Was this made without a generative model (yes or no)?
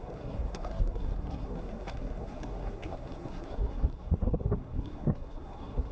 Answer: no